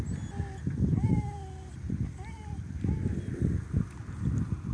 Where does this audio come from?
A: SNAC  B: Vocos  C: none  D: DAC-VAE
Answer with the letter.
C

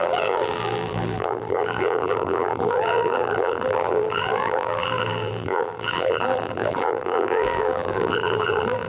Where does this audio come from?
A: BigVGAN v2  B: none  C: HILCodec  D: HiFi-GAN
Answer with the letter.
A